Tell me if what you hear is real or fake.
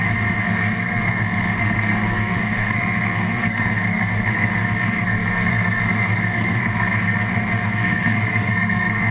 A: fake